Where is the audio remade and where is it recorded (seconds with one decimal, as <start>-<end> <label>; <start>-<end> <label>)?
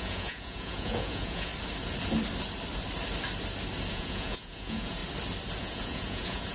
0.0-1.5 remade; 1.5-3.9 recorded; 3.9-5.0 remade; 5.0-5.6 recorded; 5.6-6.5 remade